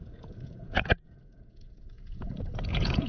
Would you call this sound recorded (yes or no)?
no